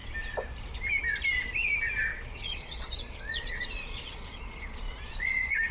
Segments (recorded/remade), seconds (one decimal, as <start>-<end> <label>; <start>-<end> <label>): 0.0-2.1 recorded; 2.1-5.7 remade